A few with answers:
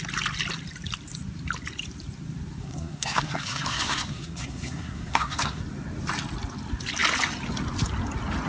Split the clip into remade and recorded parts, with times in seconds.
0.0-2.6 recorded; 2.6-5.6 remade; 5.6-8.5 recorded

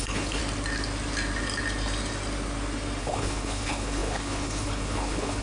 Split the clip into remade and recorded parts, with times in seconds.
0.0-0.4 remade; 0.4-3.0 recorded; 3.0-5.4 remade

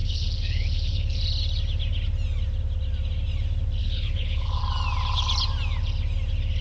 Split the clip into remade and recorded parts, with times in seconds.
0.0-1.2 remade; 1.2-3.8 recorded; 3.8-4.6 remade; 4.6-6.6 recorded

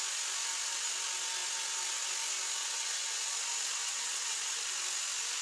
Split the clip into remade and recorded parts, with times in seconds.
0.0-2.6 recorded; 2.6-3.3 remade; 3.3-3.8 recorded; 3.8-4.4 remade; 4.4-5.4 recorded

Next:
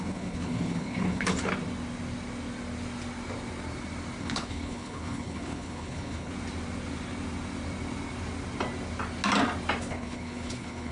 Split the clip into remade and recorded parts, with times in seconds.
0.0-1.5 remade; 1.5-4.2 recorded; 4.2-6.3 remade; 6.3-9.8 recorded; 9.8-10.9 remade

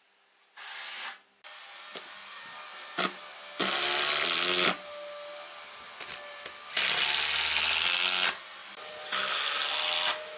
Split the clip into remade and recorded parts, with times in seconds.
0.0-10.4 recorded

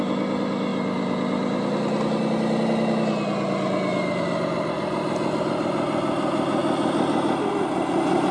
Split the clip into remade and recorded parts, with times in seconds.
0.0-8.3 recorded